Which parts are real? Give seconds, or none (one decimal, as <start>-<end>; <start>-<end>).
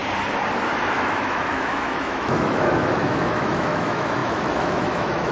0.0-0.7